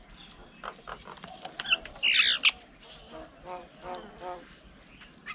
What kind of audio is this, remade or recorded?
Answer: recorded